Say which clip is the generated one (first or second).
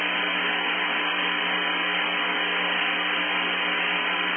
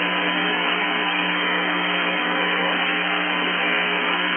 second